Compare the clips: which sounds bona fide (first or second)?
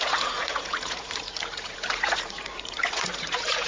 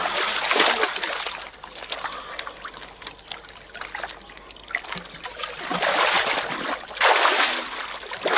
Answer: second